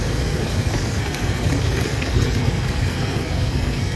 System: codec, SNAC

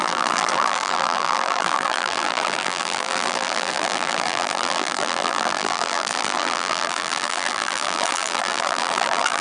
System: vocoder, BigVGAN v2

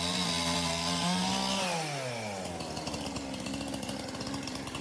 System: none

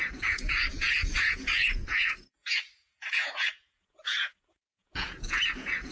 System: vocoder, Vocos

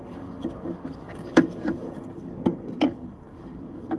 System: codec, DAC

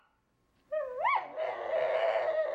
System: none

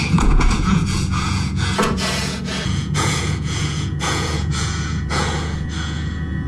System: vocoder, Vocos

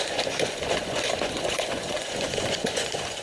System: vocoder, Vocos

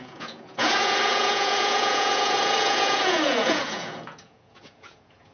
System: vocoder, Vocos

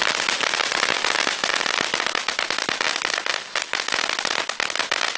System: none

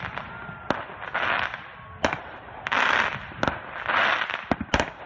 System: none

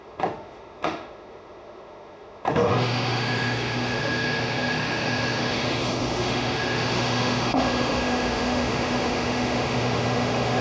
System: autoencoder, DAC-VAE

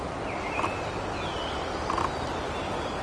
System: none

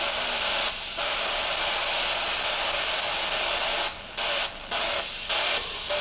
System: none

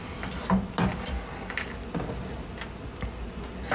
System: none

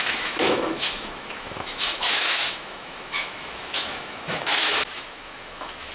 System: autoencoder, DAC-VAE